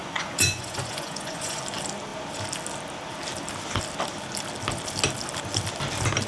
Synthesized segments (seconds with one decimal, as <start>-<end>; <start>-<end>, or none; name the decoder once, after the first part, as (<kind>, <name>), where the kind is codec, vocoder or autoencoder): 0.0-1.6 (vocoder, Vocos)